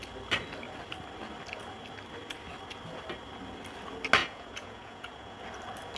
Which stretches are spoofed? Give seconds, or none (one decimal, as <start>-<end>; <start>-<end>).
4.2-5.4